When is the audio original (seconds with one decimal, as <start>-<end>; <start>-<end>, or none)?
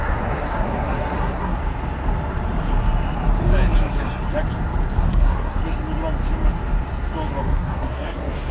1.6-5.0; 5.6-7.4